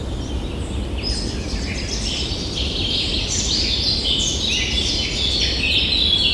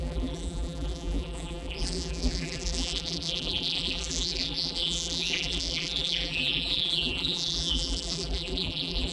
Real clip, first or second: first